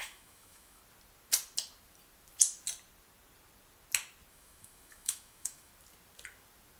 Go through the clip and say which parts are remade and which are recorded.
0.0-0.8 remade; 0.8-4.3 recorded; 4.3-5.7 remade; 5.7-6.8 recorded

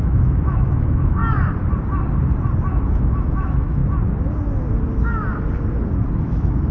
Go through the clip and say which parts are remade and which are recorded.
0.0-1.2 remade; 1.2-2.7 recorded; 2.7-3.8 remade; 3.8-6.2 recorded; 6.2-6.7 remade